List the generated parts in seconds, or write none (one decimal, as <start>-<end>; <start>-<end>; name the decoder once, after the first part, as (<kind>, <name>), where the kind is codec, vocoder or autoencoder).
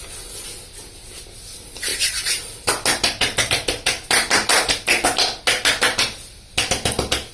none